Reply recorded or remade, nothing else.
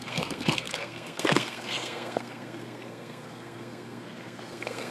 remade